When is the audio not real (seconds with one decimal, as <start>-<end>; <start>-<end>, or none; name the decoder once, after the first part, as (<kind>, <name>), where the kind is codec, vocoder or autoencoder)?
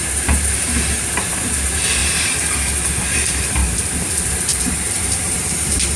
0.0-2.0 (vocoder, BigVGAN v2); 2.9-6.0